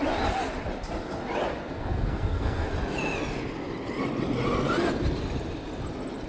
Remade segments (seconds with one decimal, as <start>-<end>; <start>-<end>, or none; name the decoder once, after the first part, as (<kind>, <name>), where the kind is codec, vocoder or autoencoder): 1.7-2.7 (codec, SNAC)